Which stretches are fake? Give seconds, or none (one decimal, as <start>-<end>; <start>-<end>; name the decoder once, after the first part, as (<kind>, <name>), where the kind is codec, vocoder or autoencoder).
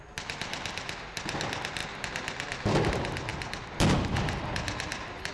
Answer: none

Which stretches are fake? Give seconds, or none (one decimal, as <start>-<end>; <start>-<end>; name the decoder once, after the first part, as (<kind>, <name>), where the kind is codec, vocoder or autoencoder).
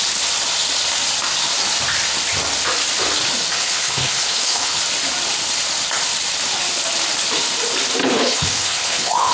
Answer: 3.5-4.8 (codec, HILCodec); 8.0-9.3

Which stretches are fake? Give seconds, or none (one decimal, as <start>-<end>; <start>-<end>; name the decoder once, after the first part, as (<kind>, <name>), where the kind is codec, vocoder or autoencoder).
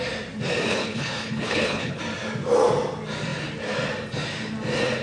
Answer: 0.7-2.0 (codec, HILCodec)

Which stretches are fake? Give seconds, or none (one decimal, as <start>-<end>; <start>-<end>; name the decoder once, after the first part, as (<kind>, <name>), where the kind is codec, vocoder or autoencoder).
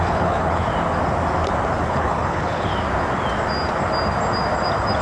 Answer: 0.0-0.7 (codec, HILCodec); 1.8-2.7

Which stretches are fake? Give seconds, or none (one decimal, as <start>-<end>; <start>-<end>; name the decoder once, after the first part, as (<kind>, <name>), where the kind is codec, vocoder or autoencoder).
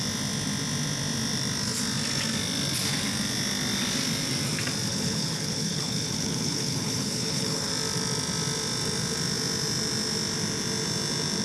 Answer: 4.9-7.7 (codec, HILCodec)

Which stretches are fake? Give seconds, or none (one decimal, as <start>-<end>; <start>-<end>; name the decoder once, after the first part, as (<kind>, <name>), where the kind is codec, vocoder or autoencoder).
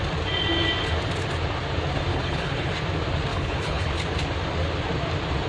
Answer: 2.1-2.7 (codec, HILCodec); 3.3-3.9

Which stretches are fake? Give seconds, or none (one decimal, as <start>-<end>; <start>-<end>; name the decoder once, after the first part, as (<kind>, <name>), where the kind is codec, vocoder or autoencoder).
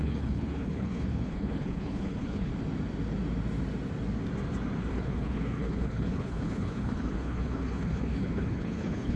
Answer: 0.0-2.5 (codec, HILCodec); 4.9-9.2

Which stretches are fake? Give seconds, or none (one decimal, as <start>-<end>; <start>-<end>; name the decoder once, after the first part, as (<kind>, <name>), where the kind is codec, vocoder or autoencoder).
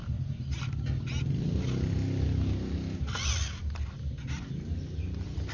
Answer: none